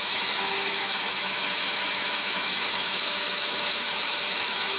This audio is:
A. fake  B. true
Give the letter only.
A